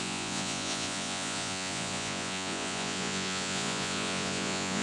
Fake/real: fake